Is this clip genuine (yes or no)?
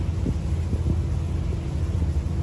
yes